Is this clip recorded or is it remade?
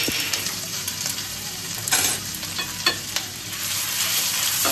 remade